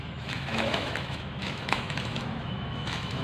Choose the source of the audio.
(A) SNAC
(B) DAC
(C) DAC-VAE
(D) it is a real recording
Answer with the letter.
C